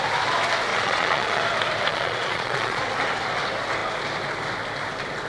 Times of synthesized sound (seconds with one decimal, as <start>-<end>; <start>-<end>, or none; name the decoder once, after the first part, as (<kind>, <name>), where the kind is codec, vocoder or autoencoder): 0.7-1.4 (vocoder, Vocos); 1.9-2.8